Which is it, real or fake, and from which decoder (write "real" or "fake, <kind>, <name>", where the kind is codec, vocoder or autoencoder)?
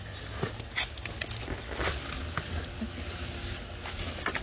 real